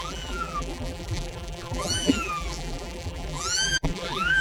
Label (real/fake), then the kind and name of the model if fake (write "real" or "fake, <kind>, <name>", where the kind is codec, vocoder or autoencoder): fake, vocoder, BigVGAN v2